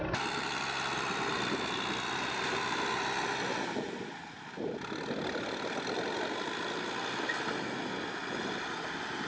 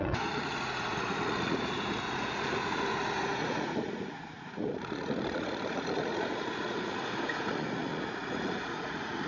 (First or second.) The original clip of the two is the first